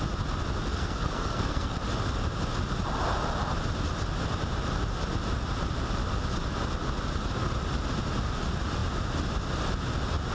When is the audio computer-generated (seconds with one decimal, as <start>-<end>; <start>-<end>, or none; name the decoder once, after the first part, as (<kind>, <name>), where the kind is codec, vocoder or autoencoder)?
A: 0.7-1.8 (codec, SNAC)